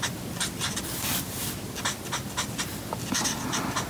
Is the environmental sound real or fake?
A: real